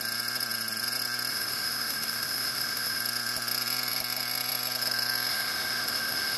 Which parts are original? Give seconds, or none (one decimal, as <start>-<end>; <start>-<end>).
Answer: 0.0-1.3; 3.0-5.3